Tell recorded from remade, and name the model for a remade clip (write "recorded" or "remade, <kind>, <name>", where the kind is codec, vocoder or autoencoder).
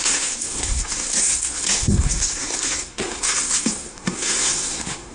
remade, codec, SNAC